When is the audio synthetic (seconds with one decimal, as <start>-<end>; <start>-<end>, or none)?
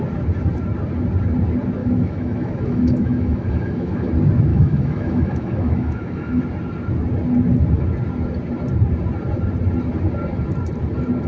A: 1.8-4.1; 4.5-6.4